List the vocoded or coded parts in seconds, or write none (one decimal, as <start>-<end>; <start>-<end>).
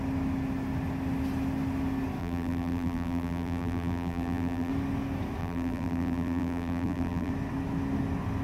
2.2-4.7; 5.4-7.3